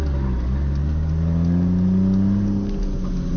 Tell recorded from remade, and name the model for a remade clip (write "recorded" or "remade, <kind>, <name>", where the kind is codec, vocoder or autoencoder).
recorded